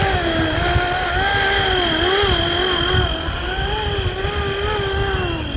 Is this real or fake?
real